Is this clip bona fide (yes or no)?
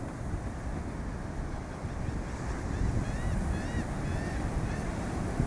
yes